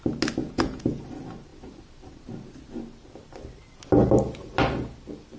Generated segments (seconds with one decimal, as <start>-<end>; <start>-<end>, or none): 0.4-1.0